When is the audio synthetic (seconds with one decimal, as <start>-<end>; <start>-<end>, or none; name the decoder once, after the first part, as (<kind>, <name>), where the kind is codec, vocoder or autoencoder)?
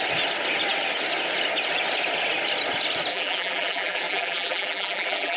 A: 3.1-5.4 (vocoder, BigVGAN v2)